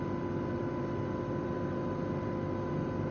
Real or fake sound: real